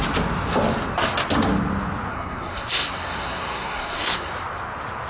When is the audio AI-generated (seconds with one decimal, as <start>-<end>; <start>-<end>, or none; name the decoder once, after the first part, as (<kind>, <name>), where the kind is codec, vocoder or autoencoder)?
2.1-4.3 (codec, SNAC)

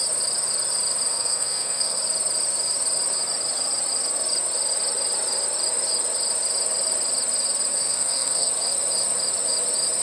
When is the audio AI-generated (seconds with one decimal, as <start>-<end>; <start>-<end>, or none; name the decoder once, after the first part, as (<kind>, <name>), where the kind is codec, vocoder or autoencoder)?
1.1-2.0 (codec, SNAC); 7.7-8.5

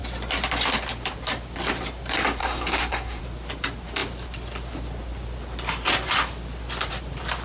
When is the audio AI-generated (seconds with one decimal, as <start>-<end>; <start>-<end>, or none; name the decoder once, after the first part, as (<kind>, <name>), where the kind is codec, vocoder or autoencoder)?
2.4-3.2 (codec, SNAC)

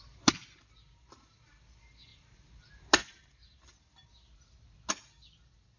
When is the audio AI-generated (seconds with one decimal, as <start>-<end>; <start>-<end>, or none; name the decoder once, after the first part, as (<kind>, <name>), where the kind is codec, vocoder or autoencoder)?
none

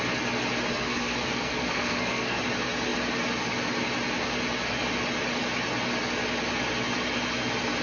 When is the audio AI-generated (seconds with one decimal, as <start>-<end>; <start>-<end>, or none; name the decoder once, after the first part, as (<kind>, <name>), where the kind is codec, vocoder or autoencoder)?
0.7-2.4 (codec, SNAC)